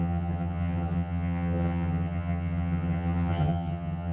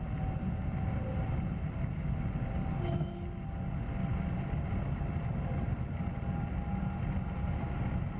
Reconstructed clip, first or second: first